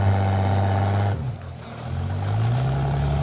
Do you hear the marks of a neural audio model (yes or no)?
no